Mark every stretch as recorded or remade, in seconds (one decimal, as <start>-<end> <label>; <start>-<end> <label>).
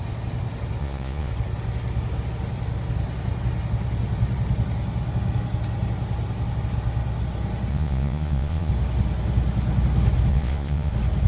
0.0-0.8 recorded; 0.8-1.3 remade; 1.3-7.7 recorded; 7.7-8.7 remade; 8.7-10.3 recorded; 10.3-10.9 remade; 10.9-11.3 recorded